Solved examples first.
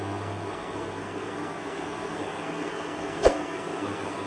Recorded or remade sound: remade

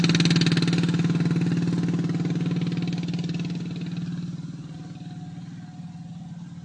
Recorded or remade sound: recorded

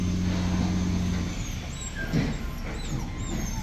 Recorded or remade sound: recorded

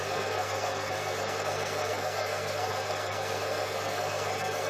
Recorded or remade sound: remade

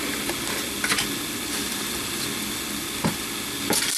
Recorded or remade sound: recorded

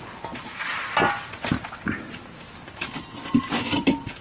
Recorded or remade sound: recorded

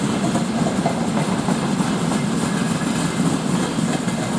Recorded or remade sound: recorded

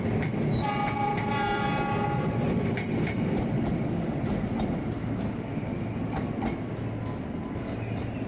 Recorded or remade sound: recorded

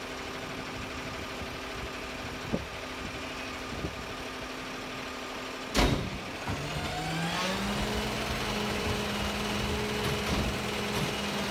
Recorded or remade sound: recorded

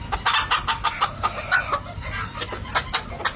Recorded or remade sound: recorded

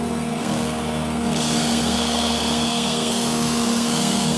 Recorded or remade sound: remade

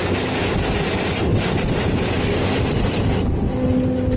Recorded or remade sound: recorded